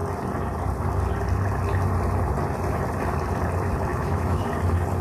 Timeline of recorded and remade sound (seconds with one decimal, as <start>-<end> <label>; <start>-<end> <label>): 0.0-3.9 recorded; 3.9-4.4 remade; 4.4-5.0 recorded